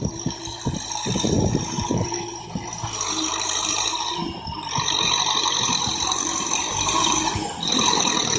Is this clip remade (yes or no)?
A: yes